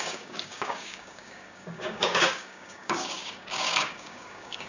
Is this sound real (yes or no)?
no